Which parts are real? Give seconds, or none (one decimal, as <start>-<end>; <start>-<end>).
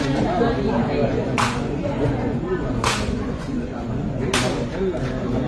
0.0-1.0; 4.3-5.5